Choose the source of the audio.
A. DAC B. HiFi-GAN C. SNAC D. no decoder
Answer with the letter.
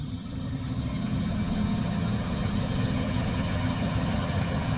B